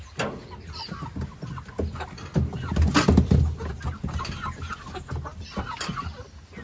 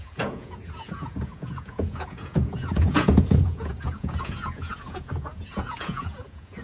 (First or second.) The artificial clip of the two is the second